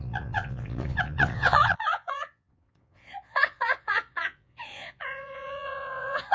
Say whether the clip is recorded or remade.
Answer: remade